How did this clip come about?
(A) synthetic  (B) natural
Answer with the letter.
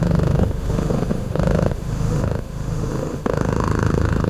A